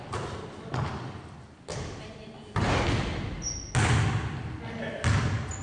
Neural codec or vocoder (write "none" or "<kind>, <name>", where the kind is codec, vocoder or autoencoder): none